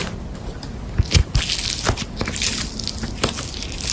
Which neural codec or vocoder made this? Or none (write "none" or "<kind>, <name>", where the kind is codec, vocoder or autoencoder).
none